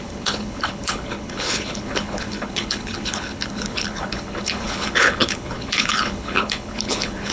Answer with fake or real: fake